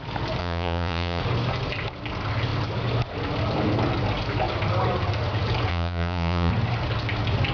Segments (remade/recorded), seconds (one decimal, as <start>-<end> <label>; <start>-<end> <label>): 0.0-0.4 recorded; 0.4-1.2 remade; 1.2-5.7 recorded; 5.7-6.5 remade; 6.5-7.5 recorded